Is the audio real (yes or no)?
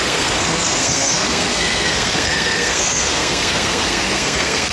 no